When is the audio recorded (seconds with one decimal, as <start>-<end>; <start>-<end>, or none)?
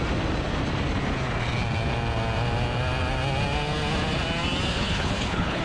0.0-4.7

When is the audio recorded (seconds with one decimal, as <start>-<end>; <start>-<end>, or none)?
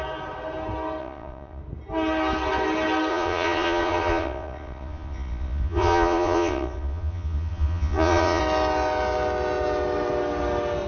0.0-1.0; 1.6-3.1; 8.4-10.9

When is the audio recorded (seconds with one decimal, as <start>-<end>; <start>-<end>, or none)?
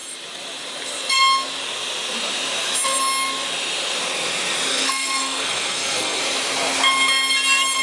0.0-4.7; 6.2-7.8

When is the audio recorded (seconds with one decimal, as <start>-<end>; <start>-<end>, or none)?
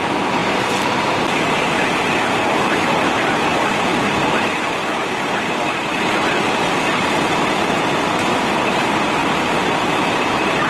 4.8-6.8; 9.2-9.8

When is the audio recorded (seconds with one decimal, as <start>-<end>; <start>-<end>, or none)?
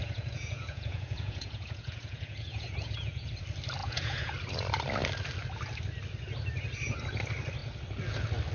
3.3-3.8; 4.3-8.5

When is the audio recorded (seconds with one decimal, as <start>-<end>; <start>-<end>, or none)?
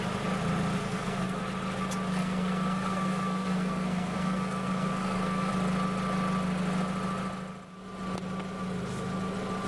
0.0-0.8; 1.4-2.2; 5.5-9.7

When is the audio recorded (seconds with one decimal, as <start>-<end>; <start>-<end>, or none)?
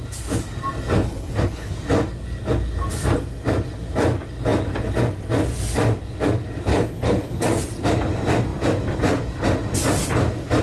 0.0-1.0; 1.7-6.7; 7.4-10.6